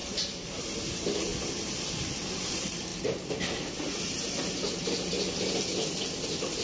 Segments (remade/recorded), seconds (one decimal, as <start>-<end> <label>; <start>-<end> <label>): 0.0-1.3 remade; 1.3-2.5 recorded; 2.5-6.6 remade